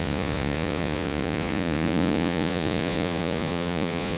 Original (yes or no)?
no